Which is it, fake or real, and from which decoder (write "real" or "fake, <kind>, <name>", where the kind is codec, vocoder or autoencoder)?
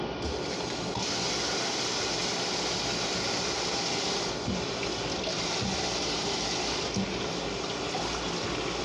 real